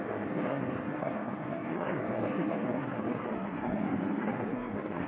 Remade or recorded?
remade